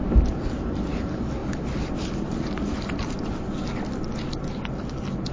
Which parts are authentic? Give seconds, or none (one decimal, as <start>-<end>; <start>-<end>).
0.0-5.3